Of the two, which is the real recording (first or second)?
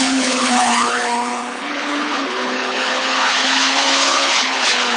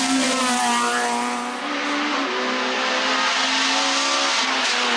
second